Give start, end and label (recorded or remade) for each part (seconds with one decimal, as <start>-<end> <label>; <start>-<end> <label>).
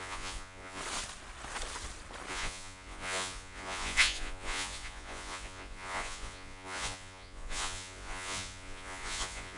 0.0-0.8 remade; 0.8-2.3 recorded; 2.3-9.6 remade